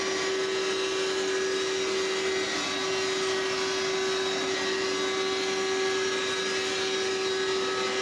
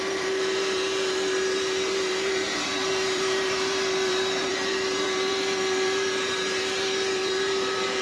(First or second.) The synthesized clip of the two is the second